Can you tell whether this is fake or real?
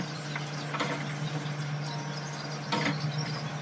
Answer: real